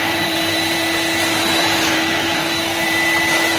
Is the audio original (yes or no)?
no